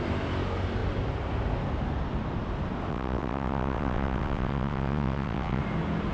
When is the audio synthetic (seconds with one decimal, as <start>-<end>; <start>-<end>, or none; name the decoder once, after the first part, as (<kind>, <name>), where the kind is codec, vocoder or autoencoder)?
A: 2.9-5.6 (vocoder, WaveNeXt)